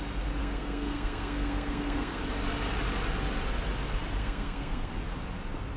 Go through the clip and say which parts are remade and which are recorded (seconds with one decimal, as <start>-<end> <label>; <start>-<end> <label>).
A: 0.0-0.4 recorded; 0.4-2.2 remade; 2.2-4.2 recorded; 4.2-4.9 remade; 4.9-5.8 recorded